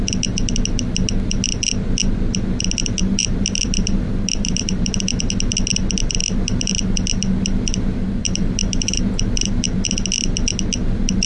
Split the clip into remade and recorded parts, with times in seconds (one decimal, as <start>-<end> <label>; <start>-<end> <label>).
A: 0.0-3.0 recorded; 3.0-4.9 remade; 4.9-6.2 recorded; 6.2-6.7 remade; 6.7-8.2 recorded; 8.2-9.0 remade; 9.0-11.3 recorded